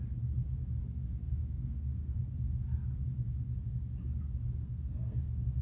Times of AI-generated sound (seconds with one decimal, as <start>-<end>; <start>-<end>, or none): 1.2-2.2; 4.6-5.6